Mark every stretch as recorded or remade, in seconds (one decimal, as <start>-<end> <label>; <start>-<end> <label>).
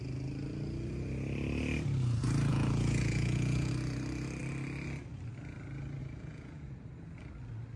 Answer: 0.0-2.5 recorded; 2.5-3.7 remade; 3.7-6.0 recorded; 6.0-6.8 remade; 6.8-7.8 recorded